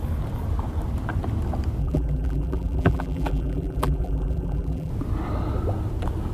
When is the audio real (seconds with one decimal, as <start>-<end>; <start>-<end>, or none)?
0.0-1.8; 4.9-6.3